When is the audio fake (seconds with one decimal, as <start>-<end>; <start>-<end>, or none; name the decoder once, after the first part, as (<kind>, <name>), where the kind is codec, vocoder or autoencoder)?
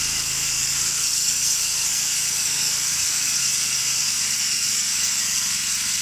0.0-6.0 (codec, SNAC)